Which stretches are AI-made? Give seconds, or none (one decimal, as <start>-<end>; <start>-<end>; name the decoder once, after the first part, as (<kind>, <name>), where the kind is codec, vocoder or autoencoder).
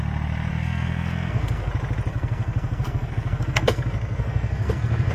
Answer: 0.5-1.7 (codec, SNAC); 2.1-5.1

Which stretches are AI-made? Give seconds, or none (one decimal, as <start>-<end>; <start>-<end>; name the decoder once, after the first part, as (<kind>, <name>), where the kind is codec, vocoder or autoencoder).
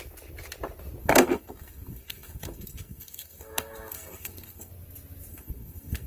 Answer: 1.0-4.7 (codec, SNAC); 5.3-6.1